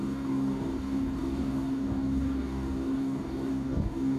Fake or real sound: fake